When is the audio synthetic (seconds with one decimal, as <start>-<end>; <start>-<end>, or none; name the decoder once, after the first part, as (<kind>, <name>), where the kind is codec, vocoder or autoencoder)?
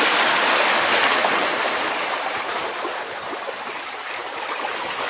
1.2-3.4 (vocoder, BigVGAN v2); 4.2-5.1